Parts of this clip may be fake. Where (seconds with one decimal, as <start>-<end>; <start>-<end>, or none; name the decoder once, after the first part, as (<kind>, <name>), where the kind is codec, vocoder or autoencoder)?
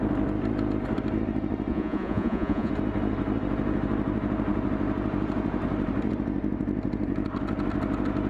1.7-2.7 (vocoder, Vocos)